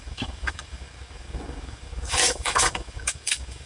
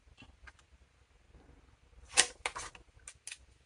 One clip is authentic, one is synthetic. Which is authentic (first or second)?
second